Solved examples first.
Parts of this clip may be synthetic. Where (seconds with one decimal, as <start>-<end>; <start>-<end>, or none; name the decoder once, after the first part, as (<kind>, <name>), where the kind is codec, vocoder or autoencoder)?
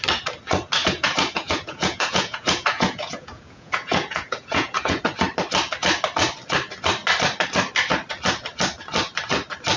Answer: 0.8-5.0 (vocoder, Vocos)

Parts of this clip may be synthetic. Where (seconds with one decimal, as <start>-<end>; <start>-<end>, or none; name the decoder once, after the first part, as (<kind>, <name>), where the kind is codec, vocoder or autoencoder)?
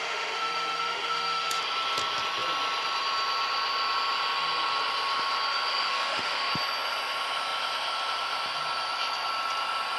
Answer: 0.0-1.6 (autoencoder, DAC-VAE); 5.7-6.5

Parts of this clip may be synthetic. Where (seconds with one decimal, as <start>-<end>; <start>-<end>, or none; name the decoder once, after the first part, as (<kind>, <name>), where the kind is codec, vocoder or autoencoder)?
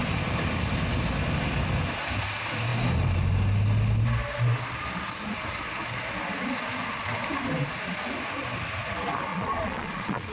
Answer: 9.3-10.3 (vocoder, Vocos)